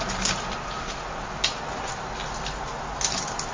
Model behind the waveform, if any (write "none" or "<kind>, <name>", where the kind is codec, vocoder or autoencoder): none